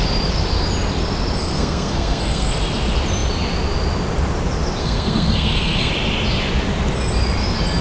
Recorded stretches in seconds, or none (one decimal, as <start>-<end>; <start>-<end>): 0.0-1.4; 2.5-4.8; 5.9-7.8